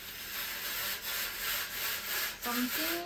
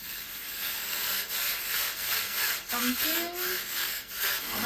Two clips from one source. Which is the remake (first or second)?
second